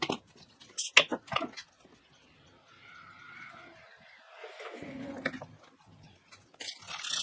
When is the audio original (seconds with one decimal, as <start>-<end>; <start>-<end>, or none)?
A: 0.0-7.2